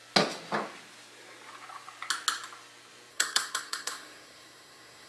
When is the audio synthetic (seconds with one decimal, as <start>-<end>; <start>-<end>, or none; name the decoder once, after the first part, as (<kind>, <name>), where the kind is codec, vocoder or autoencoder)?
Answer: 3.1-5.1 (codec, SNAC)